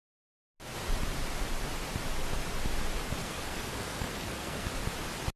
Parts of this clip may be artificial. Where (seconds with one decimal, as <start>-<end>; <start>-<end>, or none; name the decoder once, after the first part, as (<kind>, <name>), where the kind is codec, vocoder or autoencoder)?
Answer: 3.2-4.7 (codec, SNAC)

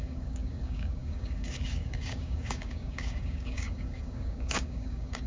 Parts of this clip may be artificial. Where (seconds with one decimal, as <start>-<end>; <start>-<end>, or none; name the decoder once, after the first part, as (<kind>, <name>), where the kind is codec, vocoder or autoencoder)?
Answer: 0.0-5.3 (codec, DAC)

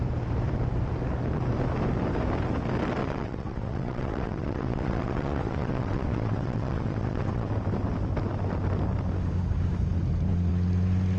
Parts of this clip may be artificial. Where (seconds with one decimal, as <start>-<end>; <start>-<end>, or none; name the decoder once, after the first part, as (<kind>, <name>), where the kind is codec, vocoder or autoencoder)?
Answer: 3.0-7.5 (vocoder, WaveNeXt)